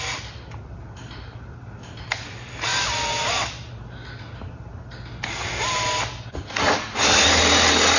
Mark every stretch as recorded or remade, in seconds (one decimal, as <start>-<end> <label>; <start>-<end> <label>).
0.0-8.0 recorded